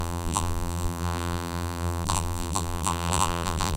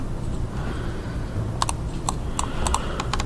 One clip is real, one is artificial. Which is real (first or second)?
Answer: second